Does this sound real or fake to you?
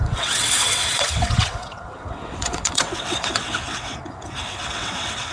fake